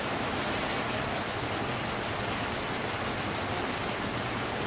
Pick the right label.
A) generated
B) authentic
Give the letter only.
B